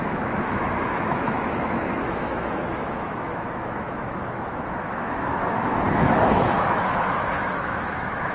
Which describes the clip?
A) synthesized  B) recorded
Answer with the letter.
A